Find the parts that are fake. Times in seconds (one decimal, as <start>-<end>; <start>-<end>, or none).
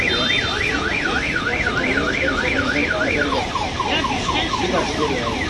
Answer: none